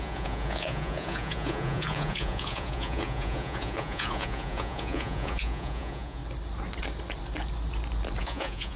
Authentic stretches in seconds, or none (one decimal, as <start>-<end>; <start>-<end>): 6.2-8.2